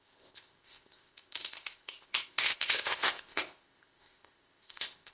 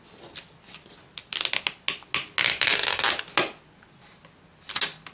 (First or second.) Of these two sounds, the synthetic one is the first